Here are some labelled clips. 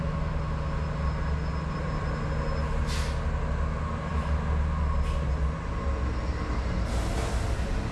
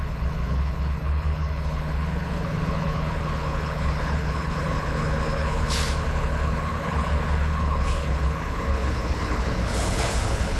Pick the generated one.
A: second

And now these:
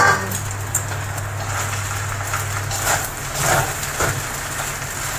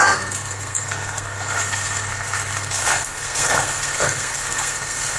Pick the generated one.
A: second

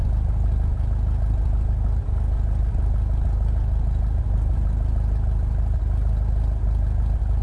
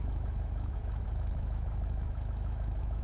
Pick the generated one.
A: second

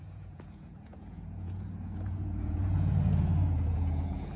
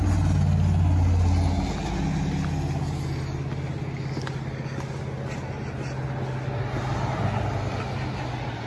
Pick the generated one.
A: first